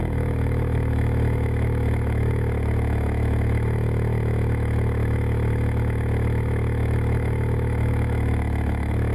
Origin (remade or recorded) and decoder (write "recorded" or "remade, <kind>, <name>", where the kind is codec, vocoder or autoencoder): remade, autoencoder, DAC-VAE